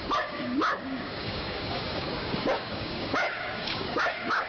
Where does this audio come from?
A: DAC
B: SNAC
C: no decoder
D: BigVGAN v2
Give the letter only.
A